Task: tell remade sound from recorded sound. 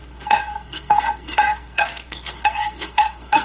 remade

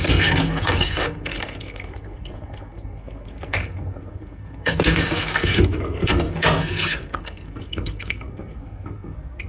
remade